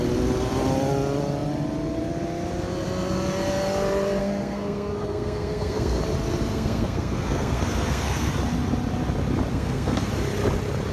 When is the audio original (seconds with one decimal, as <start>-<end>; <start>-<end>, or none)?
0.0-4.2; 6.0-6.5; 8.3-9.5; 10.1-10.9